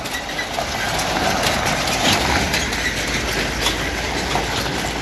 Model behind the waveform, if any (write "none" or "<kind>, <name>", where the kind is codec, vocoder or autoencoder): none